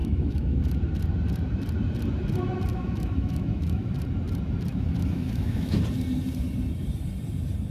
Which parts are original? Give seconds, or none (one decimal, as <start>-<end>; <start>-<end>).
0.8-2.7; 3.9-4.7; 5.8-7.7